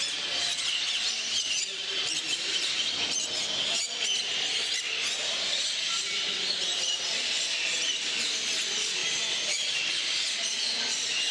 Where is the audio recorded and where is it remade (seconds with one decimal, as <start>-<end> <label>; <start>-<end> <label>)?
0.0-11.3 recorded